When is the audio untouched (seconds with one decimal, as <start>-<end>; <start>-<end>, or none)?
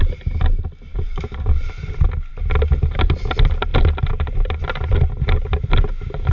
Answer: 0.0-0.9; 1.9-6.3